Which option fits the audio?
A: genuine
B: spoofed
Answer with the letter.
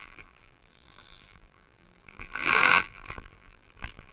B